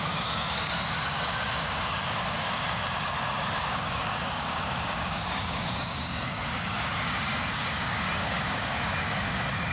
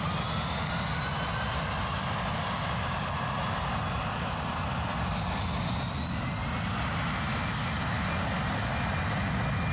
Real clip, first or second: second